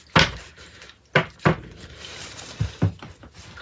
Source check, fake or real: real